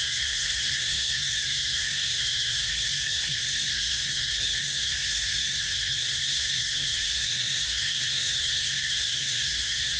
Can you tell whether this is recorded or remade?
remade